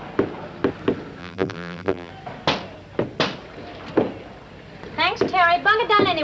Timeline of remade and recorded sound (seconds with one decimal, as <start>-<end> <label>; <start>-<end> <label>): 0.0-1.2 recorded; 1.2-2.1 remade; 2.1-6.2 recorded